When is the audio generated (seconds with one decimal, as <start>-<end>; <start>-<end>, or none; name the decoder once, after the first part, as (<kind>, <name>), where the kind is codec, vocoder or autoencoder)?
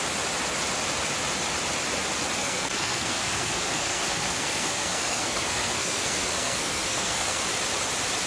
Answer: 2.4-7.4 (codec, SNAC)